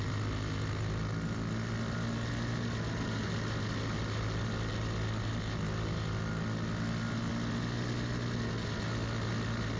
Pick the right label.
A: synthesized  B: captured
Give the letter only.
B